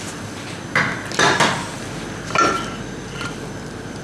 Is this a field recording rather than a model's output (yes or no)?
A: yes